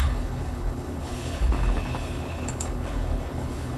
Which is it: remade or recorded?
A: remade